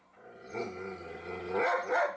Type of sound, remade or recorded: recorded